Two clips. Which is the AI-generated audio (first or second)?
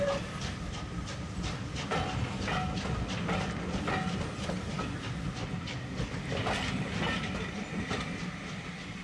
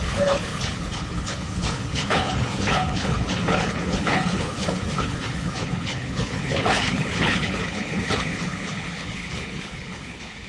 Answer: second